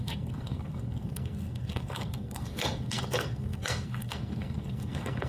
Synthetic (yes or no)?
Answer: yes